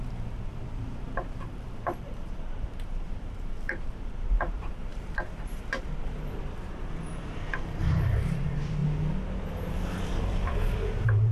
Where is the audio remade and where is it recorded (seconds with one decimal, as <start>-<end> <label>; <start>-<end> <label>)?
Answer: 0.0-8.8 remade; 8.8-9.5 recorded; 9.5-11.3 remade